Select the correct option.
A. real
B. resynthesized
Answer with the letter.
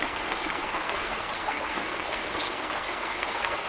B